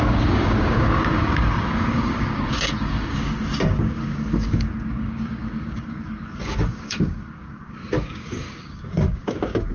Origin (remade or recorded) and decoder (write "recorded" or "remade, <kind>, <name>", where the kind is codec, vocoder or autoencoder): remade, codec, DAC